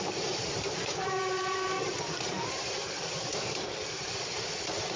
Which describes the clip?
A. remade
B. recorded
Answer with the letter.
A